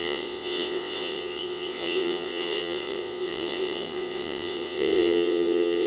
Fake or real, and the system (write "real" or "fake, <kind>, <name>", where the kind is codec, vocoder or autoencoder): fake, vocoder, WaveNeXt